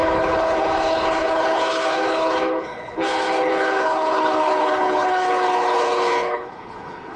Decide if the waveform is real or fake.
fake